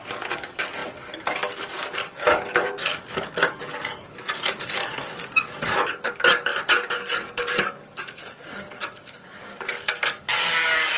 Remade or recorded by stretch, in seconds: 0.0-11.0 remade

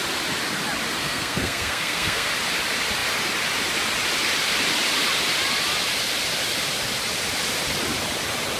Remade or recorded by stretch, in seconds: 0.0-1.0 recorded; 1.0-2.3 remade; 2.3-8.6 recorded

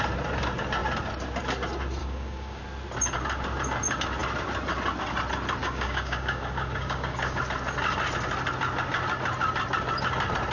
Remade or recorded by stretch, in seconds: 0.0-2.0 recorded; 2.0-2.6 remade; 2.6-5.6 recorded; 5.6-7.4 remade; 7.4-10.5 recorded